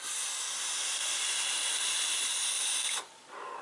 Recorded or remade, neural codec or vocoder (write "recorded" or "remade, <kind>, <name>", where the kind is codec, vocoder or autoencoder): recorded